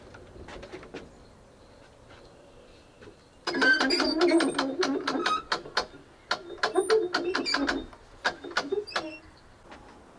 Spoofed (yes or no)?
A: no